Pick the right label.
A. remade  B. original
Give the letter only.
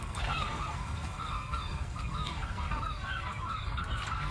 A